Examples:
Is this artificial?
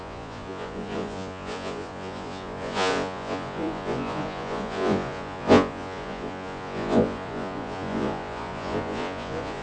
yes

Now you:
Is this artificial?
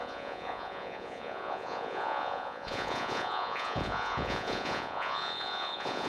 yes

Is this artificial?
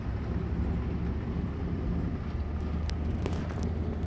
no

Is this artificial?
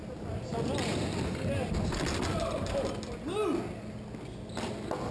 no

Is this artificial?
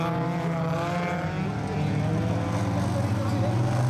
no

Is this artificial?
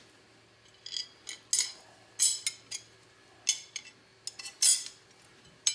no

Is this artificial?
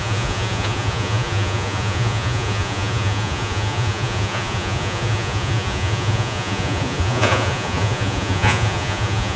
yes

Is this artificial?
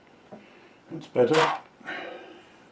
yes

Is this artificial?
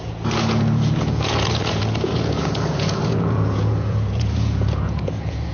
yes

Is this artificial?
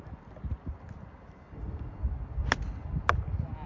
no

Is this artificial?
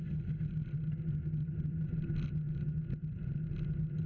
no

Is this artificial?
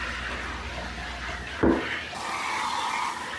no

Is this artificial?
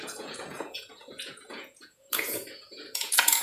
yes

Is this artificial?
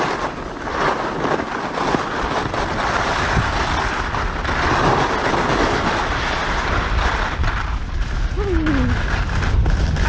no